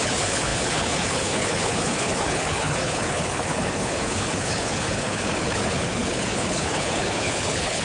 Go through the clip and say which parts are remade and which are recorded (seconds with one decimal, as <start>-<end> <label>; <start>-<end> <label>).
0.0-7.8 remade

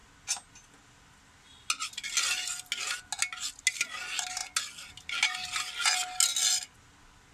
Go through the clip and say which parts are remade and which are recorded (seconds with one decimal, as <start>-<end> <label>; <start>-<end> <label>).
0.0-7.3 recorded